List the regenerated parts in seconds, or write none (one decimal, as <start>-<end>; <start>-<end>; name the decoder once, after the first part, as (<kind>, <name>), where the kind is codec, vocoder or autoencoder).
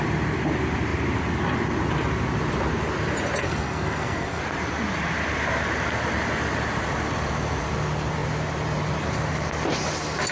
3.4-4.4 (codec, SNAC)